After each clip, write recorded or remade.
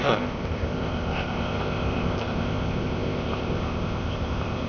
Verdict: remade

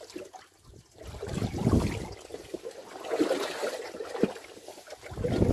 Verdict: recorded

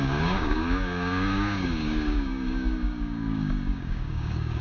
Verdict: remade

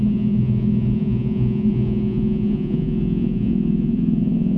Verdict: remade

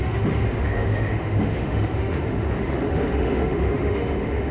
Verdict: remade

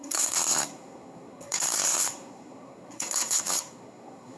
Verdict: remade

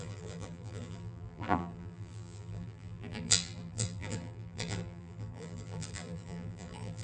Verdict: remade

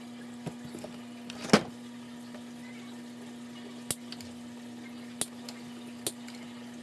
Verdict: recorded